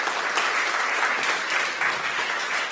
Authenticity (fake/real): real